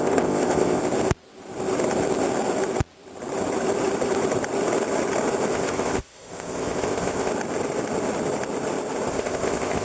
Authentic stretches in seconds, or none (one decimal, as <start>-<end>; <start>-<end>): 0.8-5.5; 7.3-9.1